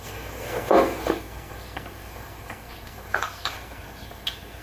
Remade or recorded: remade